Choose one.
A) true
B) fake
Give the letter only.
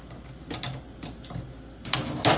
A